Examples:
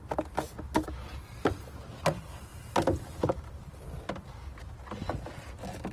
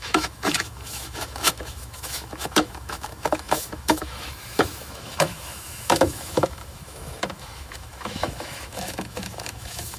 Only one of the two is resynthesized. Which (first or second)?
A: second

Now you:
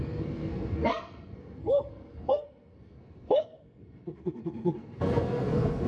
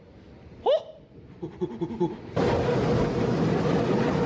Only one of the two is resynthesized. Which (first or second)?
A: first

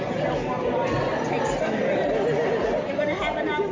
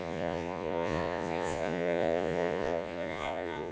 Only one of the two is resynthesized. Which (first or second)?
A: second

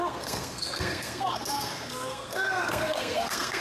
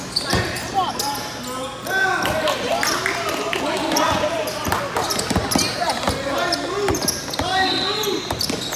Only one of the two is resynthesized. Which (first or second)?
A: first